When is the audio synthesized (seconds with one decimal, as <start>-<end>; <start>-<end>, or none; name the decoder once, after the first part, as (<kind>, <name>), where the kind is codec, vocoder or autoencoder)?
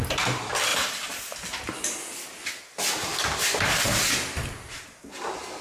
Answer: none